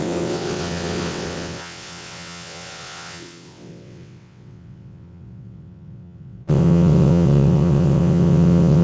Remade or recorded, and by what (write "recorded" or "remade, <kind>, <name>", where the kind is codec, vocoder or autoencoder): remade, vocoder, WaveNeXt